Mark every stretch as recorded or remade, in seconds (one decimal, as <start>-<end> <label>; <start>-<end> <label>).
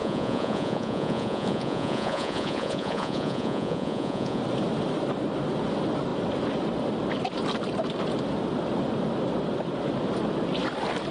0.0-4.4 remade; 4.4-11.1 recorded